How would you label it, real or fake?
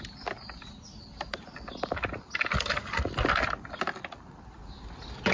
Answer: real